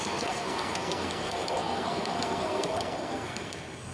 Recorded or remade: remade